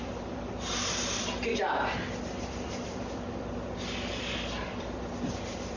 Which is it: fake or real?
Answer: fake